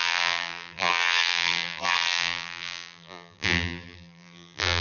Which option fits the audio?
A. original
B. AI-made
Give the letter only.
B